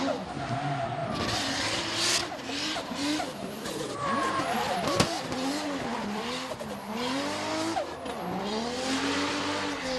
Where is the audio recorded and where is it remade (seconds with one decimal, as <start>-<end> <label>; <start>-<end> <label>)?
0.0-1.0 recorded; 1.0-4.4 remade; 4.4-5.9 recorded; 5.9-7.5 remade; 7.5-10.0 recorded